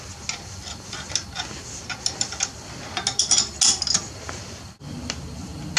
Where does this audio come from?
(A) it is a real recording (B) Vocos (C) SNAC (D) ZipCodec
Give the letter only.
A